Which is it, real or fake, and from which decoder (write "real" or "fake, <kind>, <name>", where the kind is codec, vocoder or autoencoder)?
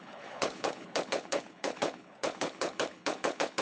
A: fake, codec, HILCodec